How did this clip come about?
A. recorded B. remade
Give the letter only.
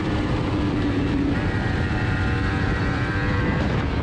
B